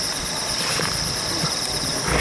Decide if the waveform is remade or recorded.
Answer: remade